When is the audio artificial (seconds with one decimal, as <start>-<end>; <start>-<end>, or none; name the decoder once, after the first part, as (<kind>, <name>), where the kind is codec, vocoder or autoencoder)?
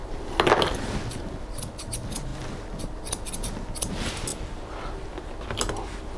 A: none